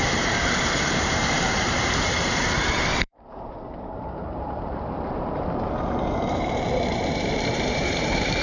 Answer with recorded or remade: remade